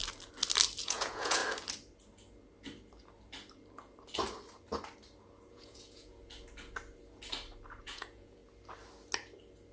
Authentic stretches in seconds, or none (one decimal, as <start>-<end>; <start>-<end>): 0.0-0.8; 1.4-5.5; 6.2-7.8; 8.4-9.7